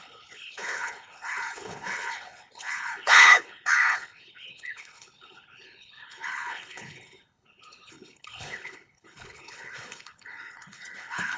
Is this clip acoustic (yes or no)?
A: no